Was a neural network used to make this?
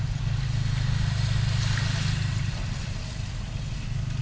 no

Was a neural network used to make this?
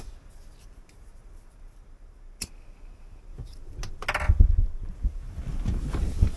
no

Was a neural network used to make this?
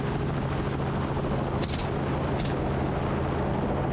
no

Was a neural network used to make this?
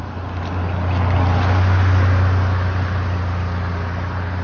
no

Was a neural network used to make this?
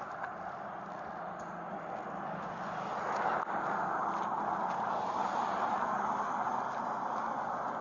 no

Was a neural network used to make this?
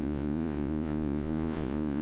yes